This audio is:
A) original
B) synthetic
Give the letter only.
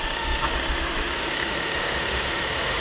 B